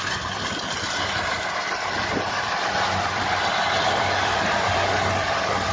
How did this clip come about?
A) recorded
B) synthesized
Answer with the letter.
B